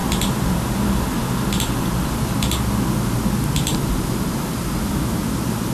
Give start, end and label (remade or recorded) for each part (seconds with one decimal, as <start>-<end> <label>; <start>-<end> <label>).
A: 0.0-5.7 recorded